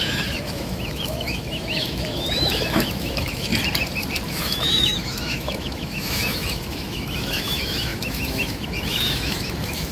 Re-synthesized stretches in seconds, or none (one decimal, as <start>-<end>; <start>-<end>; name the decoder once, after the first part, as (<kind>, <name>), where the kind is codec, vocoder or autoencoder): 0.0-3.5 (autoencoder, DAC-VAE); 4.3-9.9